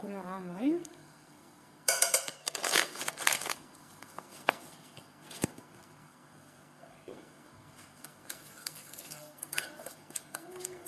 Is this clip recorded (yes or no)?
no